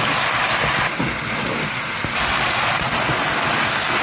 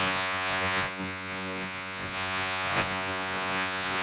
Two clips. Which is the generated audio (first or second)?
second